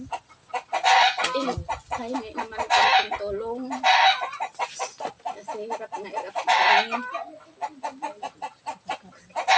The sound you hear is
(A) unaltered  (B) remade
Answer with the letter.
A